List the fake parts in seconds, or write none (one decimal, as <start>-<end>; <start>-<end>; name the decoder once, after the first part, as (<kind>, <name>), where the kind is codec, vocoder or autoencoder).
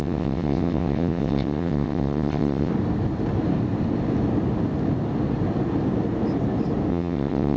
0.0-2.7 (vocoder, WaveNeXt); 6.9-7.6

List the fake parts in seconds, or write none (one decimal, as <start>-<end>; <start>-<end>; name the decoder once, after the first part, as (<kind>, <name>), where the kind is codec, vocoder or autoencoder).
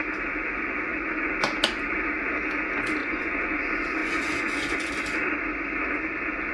3.0-3.6 (vocoder, Vocos); 4.0-4.9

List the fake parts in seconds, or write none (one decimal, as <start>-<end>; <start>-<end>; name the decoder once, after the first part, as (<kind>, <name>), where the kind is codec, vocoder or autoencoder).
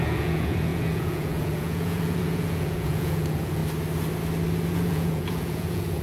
0.0-3.6 (vocoder, Vocos); 4.7-6.0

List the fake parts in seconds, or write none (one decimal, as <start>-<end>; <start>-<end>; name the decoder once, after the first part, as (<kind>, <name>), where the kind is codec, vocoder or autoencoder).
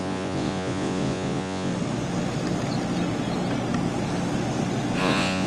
0.0-1.7 (vocoder, Vocos); 5.0-5.5